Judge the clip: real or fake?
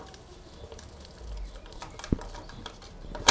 real